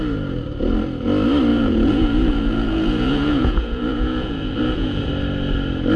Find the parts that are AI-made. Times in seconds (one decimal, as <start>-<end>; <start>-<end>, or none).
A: 1.5-5.1